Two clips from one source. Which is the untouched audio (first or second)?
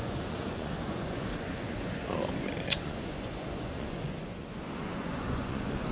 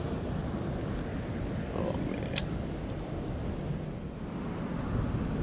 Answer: second